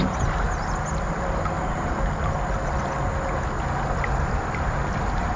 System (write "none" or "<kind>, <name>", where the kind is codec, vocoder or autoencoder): none